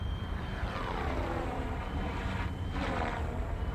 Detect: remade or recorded remade